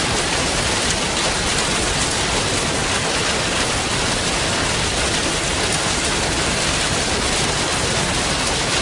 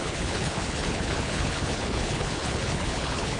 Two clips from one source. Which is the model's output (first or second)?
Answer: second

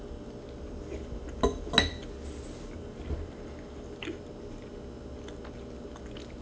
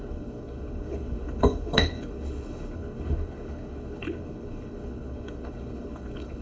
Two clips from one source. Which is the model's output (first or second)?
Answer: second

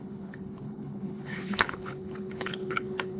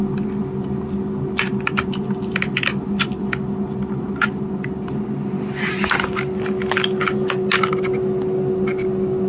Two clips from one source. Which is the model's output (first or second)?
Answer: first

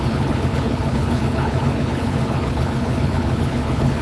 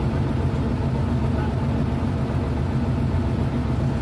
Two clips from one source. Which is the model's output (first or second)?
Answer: first